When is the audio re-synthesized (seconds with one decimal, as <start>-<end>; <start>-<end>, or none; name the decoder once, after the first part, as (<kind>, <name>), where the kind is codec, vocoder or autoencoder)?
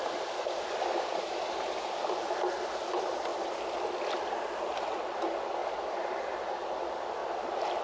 1.1-2.0 (vocoder, BigVGAN v2); 5.6-6.5; 7.2-7.8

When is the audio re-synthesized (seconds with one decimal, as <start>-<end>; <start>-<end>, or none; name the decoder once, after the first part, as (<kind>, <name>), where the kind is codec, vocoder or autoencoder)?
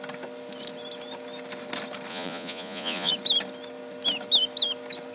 2.1-3.1 (vocoder, Vocos)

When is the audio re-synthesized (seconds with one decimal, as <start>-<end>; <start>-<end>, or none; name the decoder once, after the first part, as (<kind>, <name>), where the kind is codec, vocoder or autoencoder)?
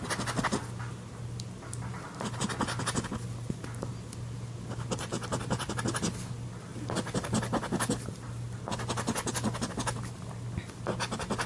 none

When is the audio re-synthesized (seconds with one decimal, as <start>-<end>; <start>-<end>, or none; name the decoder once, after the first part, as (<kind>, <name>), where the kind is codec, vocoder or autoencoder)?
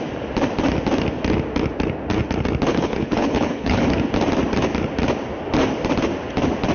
2.7-3.8 (codec, HILCodec)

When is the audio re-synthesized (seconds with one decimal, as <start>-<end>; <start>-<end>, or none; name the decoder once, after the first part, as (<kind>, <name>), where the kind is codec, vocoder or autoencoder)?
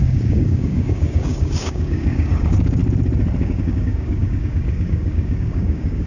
0.0-2.8 (codec, DAC); 3.4-6.1